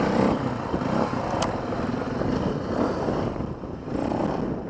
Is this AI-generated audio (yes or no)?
no